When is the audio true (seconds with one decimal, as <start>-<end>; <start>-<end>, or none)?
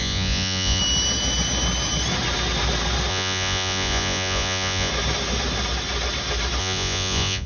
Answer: 0.8-3.1; 4.9-6.6